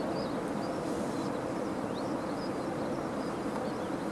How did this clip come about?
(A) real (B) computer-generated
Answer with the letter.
A